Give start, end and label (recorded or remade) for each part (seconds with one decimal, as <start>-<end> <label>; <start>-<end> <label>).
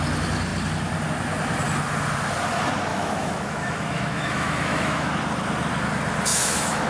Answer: 0.0-2.9 recorded; 2.9-5.1 remade; 5.1-6.3 recorded; 6.3-6.9 remade